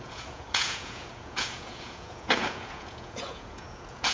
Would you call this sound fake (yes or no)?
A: yes